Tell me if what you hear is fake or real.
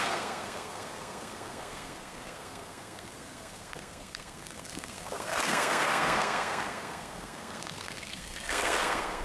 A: fake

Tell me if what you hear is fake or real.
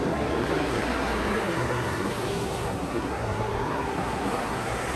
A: fake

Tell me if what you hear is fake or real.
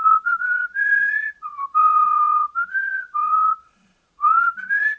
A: fake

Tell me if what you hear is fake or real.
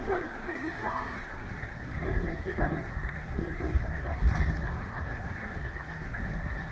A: fake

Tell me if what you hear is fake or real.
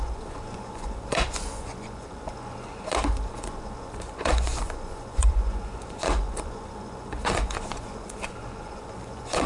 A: fake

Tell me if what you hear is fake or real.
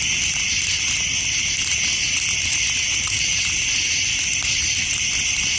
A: real